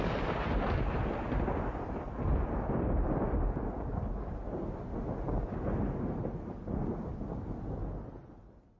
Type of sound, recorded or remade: recorded